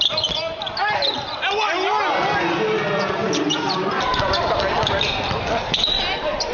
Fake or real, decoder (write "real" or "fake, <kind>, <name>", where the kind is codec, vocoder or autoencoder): real